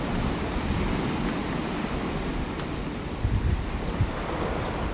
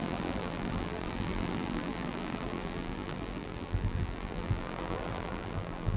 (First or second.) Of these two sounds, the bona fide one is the first